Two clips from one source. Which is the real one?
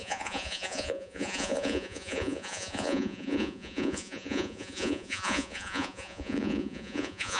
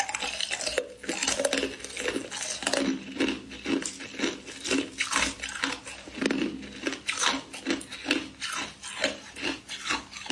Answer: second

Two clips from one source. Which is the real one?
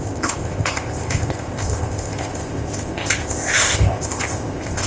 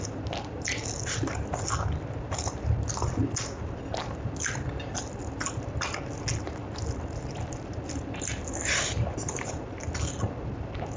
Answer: second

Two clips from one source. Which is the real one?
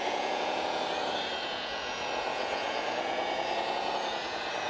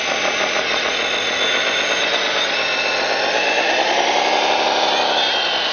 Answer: second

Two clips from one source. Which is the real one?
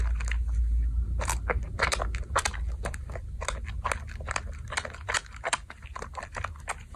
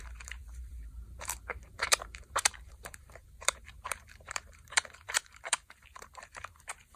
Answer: first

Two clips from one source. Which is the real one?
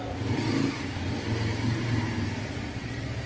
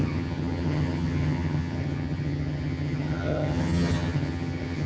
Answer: first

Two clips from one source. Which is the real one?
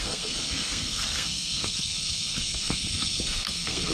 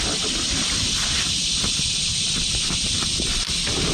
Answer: second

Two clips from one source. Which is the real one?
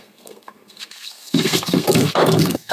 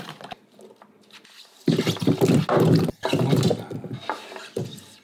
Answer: second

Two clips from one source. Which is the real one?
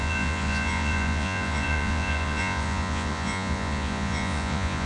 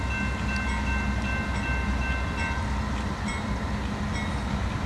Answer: second